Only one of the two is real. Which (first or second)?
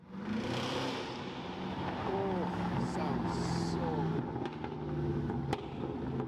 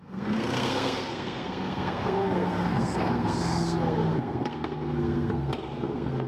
first